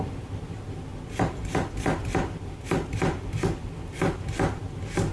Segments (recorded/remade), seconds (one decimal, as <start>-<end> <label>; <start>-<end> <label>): 0.0-5.1 recorded